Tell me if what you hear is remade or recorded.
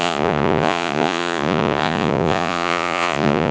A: remade